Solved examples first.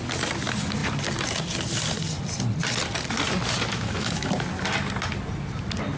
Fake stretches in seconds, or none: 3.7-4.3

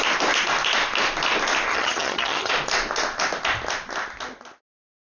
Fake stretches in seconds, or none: 1.7-2.5